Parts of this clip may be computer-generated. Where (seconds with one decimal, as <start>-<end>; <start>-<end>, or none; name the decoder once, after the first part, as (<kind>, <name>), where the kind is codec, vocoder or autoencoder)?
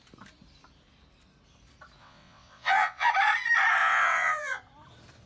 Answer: 2.0-3.1 (vocoder, WaveNeXt); 3.8-4.6